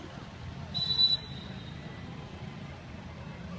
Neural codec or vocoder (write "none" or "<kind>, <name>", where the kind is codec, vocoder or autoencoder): none